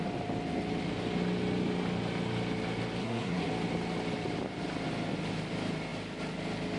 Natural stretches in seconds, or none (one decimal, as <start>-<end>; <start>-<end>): 0.0-3.0; 3.5-6.8